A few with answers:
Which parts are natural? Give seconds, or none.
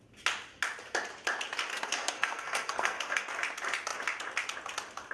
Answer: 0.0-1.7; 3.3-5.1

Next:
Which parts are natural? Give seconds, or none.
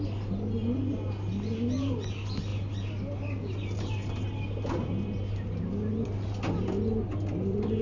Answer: 0.0-7.8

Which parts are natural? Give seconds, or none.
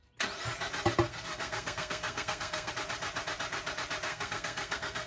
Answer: 0.0-1.1; 2.7-4.1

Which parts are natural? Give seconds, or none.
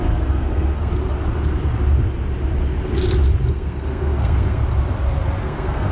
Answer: 0.9-3.5; 4.6-5.4